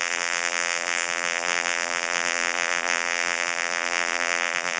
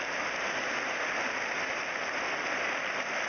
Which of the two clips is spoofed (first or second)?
first